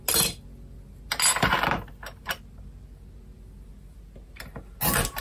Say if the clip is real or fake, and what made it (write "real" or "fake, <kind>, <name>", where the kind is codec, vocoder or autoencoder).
real